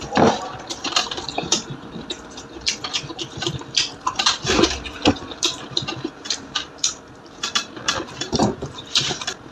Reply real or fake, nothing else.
fake